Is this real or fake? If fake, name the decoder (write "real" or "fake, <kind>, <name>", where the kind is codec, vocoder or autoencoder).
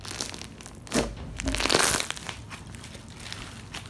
real